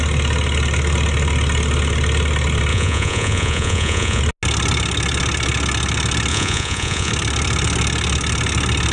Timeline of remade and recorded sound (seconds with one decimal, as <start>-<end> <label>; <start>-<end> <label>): 0.0-2.7 recorded; 2.7-4.2 remade; 4.2-6.3 recorded; 6.3-7.1 remade; 7.1-8.9 recorded